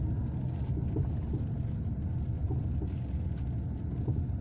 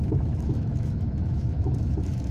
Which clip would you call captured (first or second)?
first